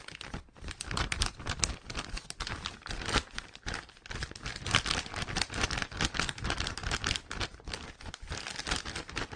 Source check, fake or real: real